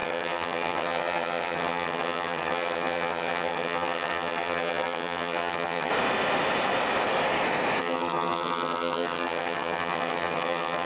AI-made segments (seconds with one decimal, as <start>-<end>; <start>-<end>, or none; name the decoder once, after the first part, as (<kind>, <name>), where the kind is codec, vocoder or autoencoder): 0.0-5.9 (vocoder, HiFi-GAN); 7.8-10.9